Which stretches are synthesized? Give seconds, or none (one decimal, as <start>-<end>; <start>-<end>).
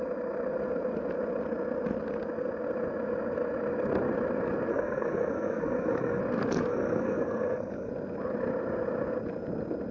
4.7-6.2; 6.7-7.9